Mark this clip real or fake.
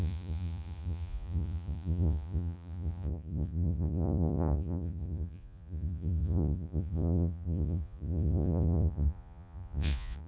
fake